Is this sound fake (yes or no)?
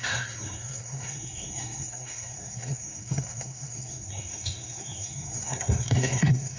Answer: yes